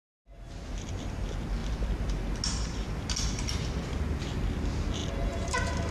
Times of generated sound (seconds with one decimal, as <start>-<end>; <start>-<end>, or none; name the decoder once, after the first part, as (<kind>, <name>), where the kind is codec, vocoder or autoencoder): none